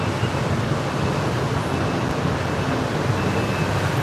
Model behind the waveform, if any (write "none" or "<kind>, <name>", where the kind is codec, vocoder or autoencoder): none